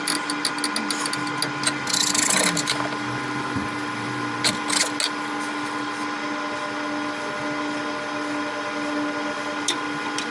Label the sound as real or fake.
real